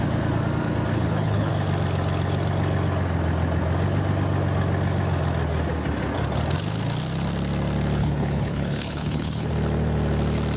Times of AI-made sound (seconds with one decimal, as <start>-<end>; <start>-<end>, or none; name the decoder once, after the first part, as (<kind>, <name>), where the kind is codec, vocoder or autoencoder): 0.9-1.5 (codec, HILCodec); 8.0-9.5